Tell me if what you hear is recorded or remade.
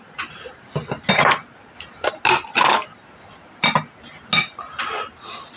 recorded